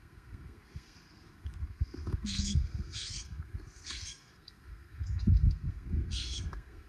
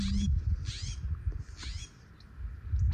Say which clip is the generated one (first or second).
first